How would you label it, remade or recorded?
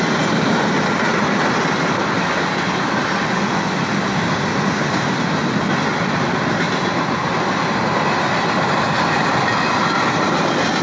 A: recorded